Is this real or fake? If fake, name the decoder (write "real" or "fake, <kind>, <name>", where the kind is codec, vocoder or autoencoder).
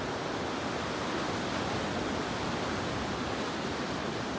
real